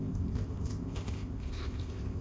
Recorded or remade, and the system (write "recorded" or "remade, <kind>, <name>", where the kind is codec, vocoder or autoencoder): remade, codec, ZipCodec